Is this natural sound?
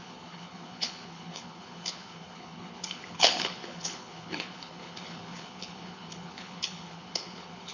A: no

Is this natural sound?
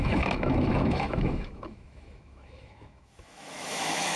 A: no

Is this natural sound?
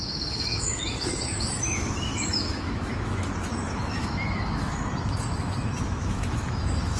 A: no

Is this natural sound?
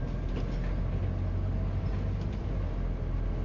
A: yes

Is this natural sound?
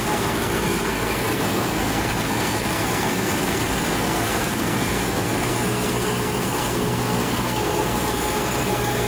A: no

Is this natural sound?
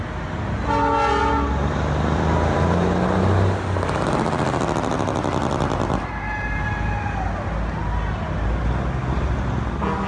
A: yes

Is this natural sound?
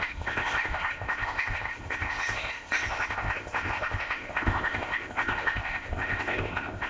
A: no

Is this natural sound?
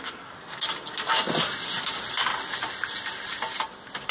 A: yes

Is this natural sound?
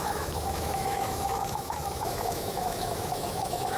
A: no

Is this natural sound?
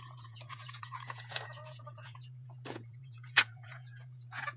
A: no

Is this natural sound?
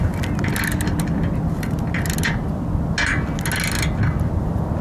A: yes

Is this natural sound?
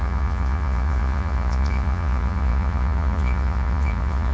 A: no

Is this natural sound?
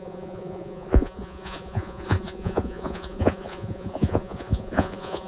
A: no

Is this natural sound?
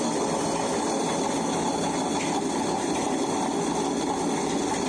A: yes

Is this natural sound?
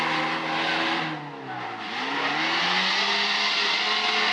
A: yes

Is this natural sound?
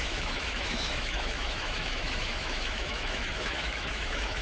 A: no